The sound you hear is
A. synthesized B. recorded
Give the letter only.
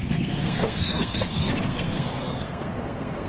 A